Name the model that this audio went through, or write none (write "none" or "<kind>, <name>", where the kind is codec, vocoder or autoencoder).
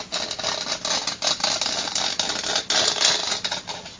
none